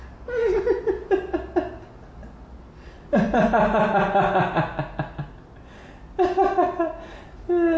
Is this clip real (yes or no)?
yes